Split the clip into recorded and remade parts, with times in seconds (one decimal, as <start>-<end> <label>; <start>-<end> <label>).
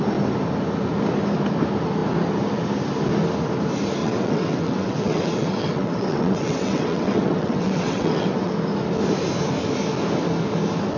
0.0-4.0 recorded; 4.0-8.5 remade; 8.5-11.0 recorded